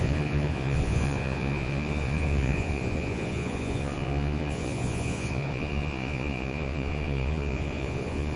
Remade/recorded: remade